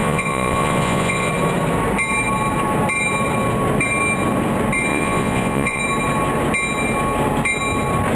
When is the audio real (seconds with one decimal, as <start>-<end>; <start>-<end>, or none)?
1.3-4.9; 5.8-8.2

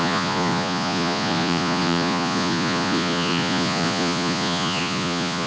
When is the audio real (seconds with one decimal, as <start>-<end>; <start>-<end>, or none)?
none

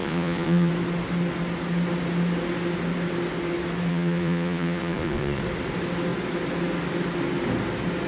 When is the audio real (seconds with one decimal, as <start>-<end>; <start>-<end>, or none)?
0.7-3.9; 5.4-8.1

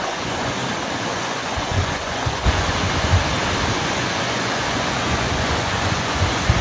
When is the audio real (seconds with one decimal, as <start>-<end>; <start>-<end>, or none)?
0.6-1.1; 3.1-3.7

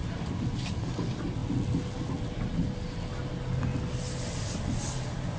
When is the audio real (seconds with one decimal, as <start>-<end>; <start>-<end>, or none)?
0.0-5.4